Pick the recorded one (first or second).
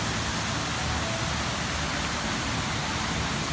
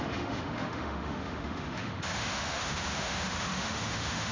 first